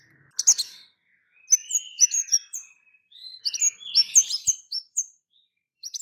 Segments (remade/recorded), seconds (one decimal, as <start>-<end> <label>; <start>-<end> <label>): 0.0-1.6 recorded; 1.6-3.4 remade; 3.4-4.2 recorded; 4.2-6.0 remade